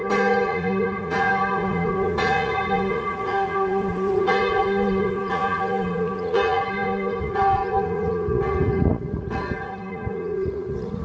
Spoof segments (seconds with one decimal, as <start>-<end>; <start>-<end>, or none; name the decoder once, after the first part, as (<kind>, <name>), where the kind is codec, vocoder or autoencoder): 0.0-11.0 (vocoder, Vocos)